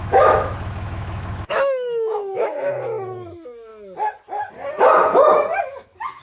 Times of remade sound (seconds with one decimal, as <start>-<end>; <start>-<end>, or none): 0.0-3.7; 5.6-6.2